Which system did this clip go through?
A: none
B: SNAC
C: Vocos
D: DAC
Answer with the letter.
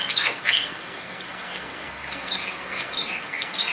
B